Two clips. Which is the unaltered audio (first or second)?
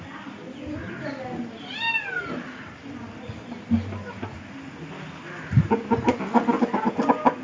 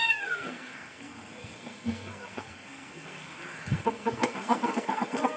first